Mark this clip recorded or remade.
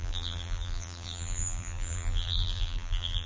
remade